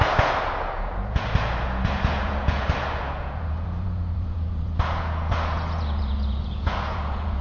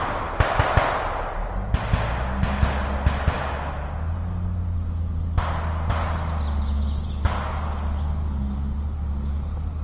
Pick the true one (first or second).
second